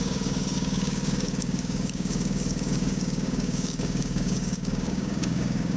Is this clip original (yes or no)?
no